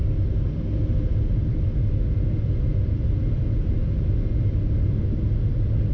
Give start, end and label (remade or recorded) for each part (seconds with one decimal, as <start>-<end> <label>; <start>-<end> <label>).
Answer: 0.0-5.9 recorded